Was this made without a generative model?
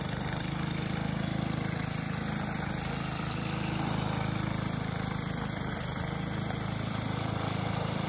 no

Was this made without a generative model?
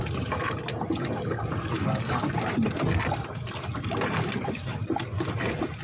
no